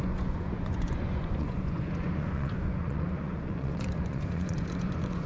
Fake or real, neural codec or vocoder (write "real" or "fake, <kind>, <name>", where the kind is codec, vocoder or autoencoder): fake, vocoder, Vocos